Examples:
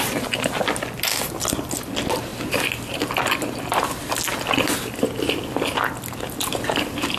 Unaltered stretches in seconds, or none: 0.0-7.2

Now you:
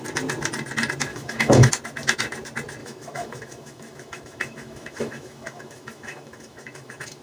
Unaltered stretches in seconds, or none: 0.0-1.1; 1.7-2.8

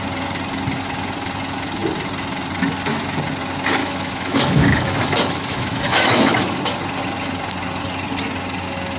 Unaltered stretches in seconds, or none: 0.0-3.8; 6.6-9.0

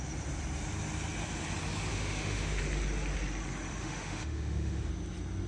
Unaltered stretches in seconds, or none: 0.0-1.9; 2.6-3.8; 4.9-5.5

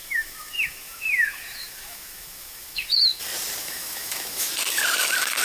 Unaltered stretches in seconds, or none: 3.2-3.6; 4.5-5.4

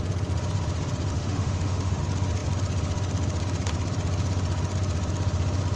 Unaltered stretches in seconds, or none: 0.0-1.1; 2.0-5.8